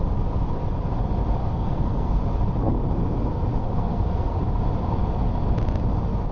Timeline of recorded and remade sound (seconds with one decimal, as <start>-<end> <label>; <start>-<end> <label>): 0.0-1.4 recorded; 1.4-2.2 remade; 2.2-3.6 recorded; 3.6-4.4 remade; 4.4-6.3 recorded